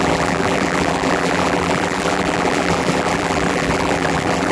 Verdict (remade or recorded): remade